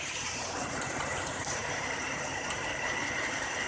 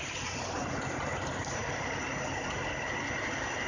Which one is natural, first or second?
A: second